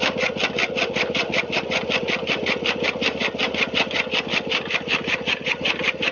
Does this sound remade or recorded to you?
recorded